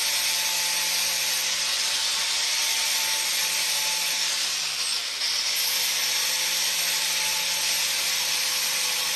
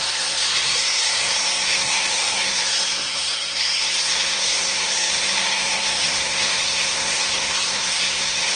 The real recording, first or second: first